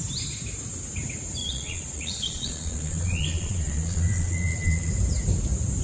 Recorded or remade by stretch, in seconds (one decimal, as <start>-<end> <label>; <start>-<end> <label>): 0.0-1.4 recorded; 1.4-4.9 remade; 4.9-5.8 recorded